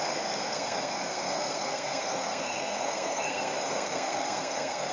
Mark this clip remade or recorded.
remade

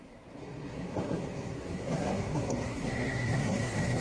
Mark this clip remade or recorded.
remade